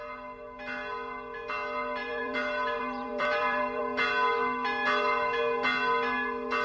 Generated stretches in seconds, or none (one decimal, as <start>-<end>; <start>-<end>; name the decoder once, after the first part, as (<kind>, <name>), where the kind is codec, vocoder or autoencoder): 2.0-3.8 (vocoder, BigVGAN v2)